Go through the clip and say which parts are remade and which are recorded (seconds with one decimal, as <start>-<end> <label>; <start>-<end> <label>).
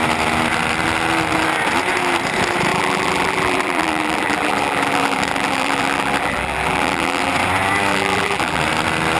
0.0-2.7 recorded; 2.7-7.3 remade; 7.3-7.9 recorded; 7.9-8.6 remade; 8.6-9.2 recorded